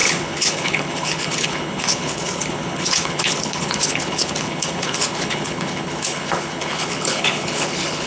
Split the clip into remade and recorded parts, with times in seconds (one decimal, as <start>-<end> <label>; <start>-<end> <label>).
0.0-8.1 remade